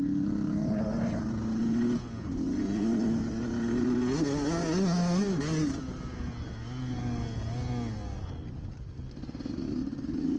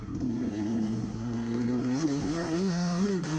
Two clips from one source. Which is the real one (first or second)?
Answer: first